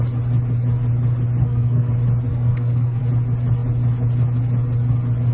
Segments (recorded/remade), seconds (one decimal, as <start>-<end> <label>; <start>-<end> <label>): 0.0-1.4 recorded; 1.4-1.9 remade; 1.9-2.3 recorded; 2.3-3.0 remade; 3.0-5.3 recorded